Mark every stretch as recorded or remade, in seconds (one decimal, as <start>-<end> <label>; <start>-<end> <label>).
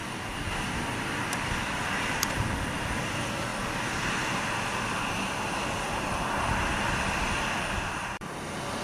0.0-3.5 remade; 3.5-7.8 recorded; 7.8-8.8 remade